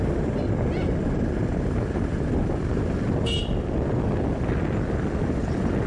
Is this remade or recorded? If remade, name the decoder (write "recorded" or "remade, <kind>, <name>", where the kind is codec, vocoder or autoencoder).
recorded